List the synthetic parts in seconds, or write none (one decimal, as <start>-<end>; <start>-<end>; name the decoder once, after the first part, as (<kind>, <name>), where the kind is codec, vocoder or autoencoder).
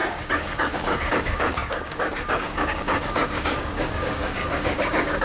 0.0-5.2 (codec, DAC)